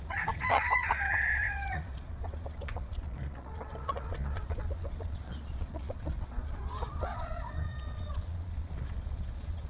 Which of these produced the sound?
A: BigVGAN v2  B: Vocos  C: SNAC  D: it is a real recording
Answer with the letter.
B